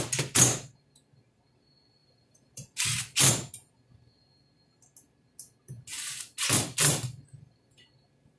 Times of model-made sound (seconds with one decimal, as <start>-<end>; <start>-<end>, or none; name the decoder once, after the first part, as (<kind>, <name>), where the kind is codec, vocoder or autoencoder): 2.0-3.3 (vocoder, BigVGAN v2); 5.9-7.9